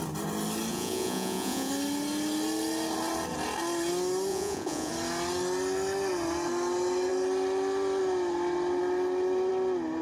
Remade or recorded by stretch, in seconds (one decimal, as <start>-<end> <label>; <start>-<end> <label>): 0.0-0.7 recorded; 0.7-1.7 remade; 1.7-4.3 recorded; 4.3-4.9 remade; 4.9-10.0 recorded

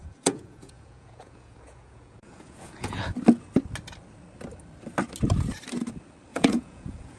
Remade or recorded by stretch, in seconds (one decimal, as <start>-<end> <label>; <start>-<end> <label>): 0.0-3.0 remade; 3.0-6.3 recorded; 6.3-7.2 remade

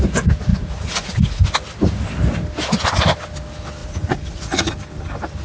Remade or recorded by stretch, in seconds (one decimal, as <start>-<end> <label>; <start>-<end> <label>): 0.0-0.5 recorded; 0.5-1.4 remade; 1.4-3.8 recorded; 3.8-4.7 remade; 4.7-5.4 recorded

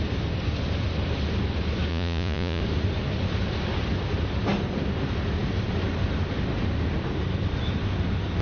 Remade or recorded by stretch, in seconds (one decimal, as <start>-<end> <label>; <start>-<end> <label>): 0.0-1.9 recorded; 1.9-2.6 remade; 2.6-8.4 recorded

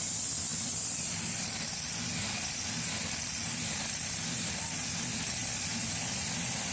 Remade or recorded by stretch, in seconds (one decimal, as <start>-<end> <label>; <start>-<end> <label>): 0.0-6.7 recorded

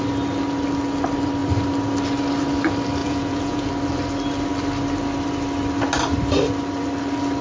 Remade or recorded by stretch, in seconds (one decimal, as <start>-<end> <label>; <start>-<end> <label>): 0.0-3.0 recorded; 3.0-3.7 remade; 3.7-7.4 recorded